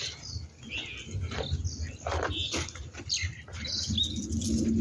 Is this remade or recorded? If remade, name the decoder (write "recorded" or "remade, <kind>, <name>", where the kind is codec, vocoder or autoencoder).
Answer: recorded